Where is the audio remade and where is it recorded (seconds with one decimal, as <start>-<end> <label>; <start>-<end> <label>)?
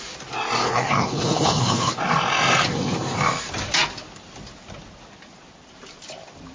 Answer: 0.0-0.6 recorded; 0.6-2.0 remade; 2.0-6.5 recorded